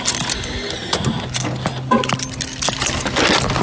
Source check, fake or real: real